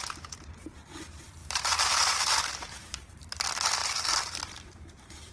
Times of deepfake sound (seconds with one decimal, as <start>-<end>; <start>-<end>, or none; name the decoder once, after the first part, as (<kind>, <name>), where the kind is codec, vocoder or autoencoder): 0.0-5.3 (vocoder, BigVGAN v2)